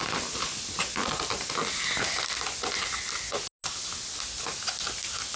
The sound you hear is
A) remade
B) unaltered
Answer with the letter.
B